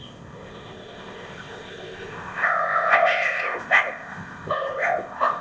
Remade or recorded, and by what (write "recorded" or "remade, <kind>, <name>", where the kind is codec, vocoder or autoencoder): remade, codec, ZipCodec